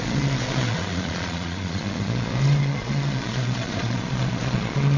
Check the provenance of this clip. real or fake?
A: fake